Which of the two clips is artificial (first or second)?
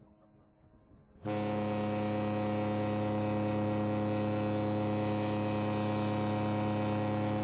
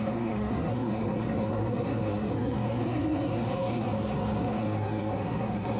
second